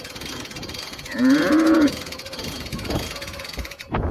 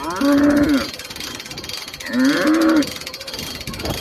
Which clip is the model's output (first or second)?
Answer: first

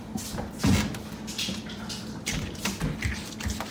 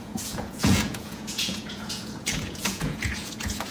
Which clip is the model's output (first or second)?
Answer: second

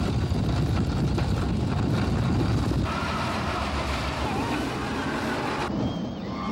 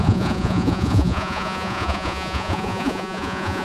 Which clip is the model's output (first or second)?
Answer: second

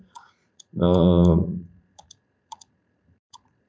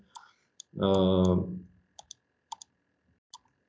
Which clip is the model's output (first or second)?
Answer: first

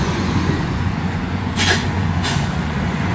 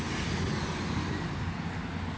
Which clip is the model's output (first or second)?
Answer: first